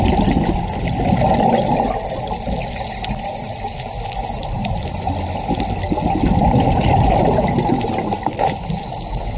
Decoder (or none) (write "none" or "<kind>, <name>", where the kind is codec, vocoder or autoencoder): none